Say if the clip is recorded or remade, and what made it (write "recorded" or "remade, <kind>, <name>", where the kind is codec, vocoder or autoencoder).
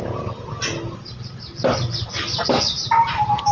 recorded